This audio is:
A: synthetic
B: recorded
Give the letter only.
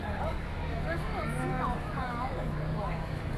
A